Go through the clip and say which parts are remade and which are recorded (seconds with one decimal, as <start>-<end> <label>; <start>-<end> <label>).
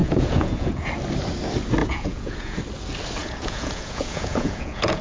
0.0-0.9 remade; 0.9-1.8 recorded; 1.8-2.6 remade; 2.6-3.2 recorded; 3.2-5.0 remade